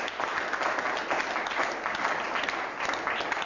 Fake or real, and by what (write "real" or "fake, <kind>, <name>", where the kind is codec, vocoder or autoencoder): real